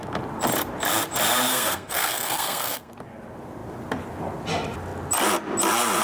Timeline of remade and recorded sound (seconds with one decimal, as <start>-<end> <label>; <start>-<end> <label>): 0.0-1.5 recorded; 1.5-2.9 remade; 2.9-6.0 recorded